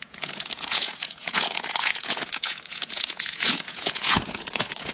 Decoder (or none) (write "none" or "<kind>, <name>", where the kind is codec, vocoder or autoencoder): vocoder, Vocos